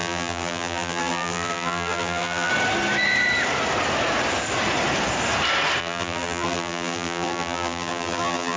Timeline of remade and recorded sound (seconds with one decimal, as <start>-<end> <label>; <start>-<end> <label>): 0.0-2.5 remade; 2.5-5.8 recorded; 5.8-8.6 remade